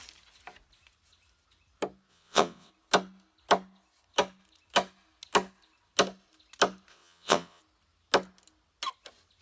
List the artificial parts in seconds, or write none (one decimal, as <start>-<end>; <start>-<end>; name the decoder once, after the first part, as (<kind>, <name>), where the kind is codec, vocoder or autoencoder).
2.1-2.7 (vocoder, WaveNeXt); 6.9-7.6